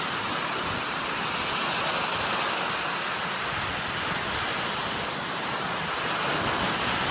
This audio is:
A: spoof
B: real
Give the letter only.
B